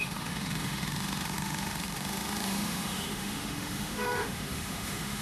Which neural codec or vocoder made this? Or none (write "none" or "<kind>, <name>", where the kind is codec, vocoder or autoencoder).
autoencoder, DAC-VAE